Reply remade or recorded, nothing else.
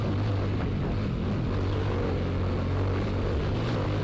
recorded